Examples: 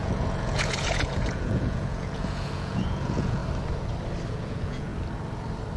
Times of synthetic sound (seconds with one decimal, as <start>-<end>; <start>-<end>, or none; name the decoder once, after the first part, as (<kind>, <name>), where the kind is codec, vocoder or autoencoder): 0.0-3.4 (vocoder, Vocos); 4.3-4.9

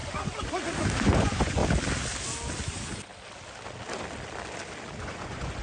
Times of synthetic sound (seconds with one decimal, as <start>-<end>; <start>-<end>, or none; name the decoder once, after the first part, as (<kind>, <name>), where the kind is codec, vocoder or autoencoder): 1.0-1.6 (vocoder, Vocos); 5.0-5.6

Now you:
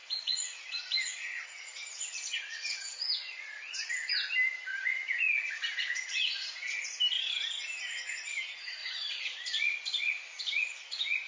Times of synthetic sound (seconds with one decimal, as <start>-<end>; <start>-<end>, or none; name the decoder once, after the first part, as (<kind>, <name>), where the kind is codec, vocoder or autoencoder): 0.0-4.1 (vocoder, Vocos); 4.7-6.8; 8.8-11.3

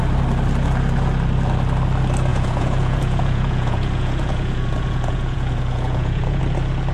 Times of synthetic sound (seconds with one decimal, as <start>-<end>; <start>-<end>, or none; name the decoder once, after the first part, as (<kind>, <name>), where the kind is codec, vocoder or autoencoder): 2.3-6.4 (vocoder, Vocos)